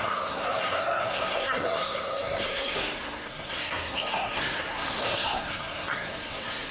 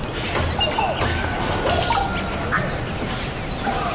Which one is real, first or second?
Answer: second